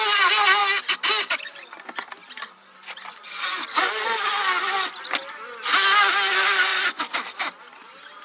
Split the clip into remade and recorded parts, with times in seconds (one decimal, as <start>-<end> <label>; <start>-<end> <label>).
0.0-8.2 recorded